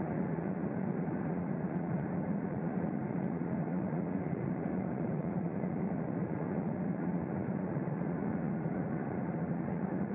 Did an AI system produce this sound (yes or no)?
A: yes